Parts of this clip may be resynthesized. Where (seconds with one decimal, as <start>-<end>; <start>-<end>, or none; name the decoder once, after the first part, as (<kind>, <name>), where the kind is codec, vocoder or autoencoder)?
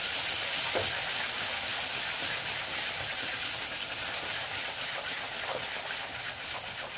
none